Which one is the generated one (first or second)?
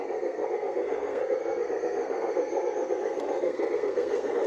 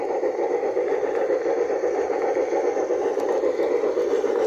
first